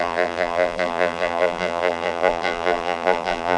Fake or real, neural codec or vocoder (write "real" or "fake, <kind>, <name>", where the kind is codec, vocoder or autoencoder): fake, vocoder, BigVGAN v2